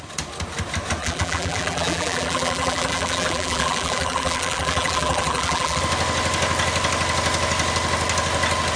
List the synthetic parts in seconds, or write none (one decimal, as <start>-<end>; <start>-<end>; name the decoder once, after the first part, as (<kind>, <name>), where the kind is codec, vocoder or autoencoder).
1.0-5.8 (vocoder, BigVGAN v2)